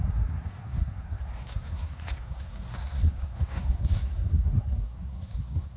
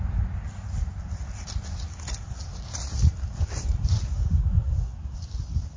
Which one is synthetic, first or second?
first